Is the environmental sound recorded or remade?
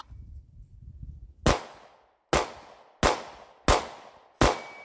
recorded